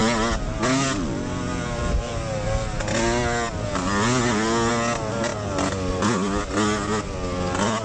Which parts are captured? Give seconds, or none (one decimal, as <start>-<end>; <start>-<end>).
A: 0.0-7.8